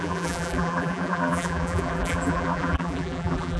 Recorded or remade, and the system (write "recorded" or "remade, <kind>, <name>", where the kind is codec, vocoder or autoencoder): remade, vocoder, BigVGAN v2